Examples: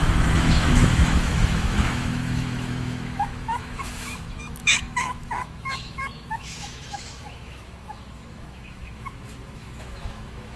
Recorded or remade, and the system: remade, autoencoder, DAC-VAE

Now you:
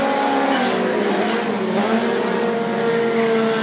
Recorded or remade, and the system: recorded